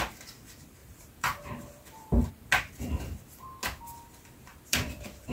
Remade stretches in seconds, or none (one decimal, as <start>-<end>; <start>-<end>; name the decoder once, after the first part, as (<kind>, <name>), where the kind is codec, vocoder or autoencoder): 0.8-2.3 (vocoder, BigVGAN v2); 4.5-5.3